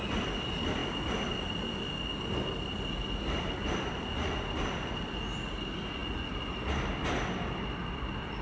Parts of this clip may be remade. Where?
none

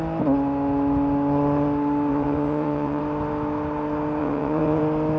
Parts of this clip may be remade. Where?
2.1-3.0 (vocoder, WaveNeXt); 4.2-4.8